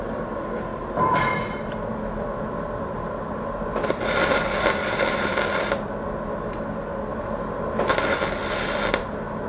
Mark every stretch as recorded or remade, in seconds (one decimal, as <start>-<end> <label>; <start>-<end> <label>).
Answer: 0.0-0.7 recorded; 0.7-5.9 remade; 5.9-7.1 recorded; 7.1-7.9 remade; 7.9-8.4 recorded; 8.4-9.0 remade; 9.0-9.5 recorded